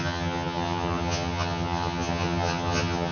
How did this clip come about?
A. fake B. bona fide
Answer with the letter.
A